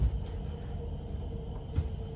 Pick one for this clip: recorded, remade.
recorded